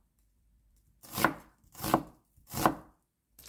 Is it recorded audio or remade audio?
remade